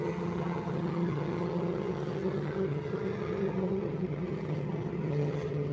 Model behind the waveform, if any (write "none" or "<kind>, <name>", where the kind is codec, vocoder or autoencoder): vocoder, HiFi-GAN